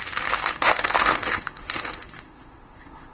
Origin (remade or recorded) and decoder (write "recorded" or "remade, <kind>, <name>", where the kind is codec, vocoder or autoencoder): remade, autoencoder, DAC-VAE